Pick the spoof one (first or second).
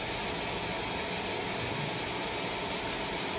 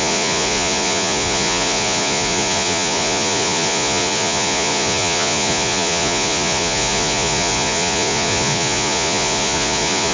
second